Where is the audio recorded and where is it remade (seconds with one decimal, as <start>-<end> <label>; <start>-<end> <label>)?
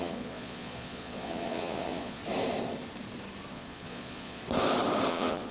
0.0-2.2 remade; 2.2-3.5 recorded; 3.5-4.4 remade; 4.4-5.1 recorded; 5.1-5.5 remade